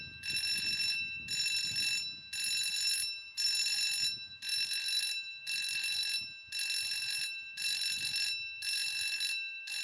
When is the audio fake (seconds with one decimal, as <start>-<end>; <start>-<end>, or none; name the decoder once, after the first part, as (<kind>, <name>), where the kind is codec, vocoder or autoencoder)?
none